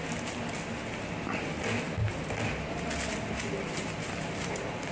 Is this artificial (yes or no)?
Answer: no